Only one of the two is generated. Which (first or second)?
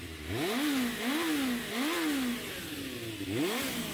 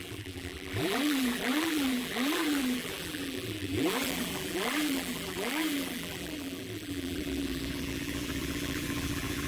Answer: second